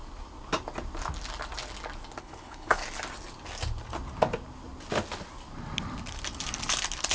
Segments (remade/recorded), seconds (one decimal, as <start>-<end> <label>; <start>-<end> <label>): 0.0-2.2 recorded; 2.2-2.8 remade; 2.8-7.1 recorded